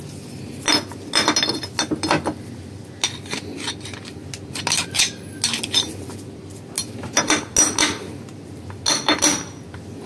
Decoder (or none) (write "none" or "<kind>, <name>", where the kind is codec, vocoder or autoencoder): none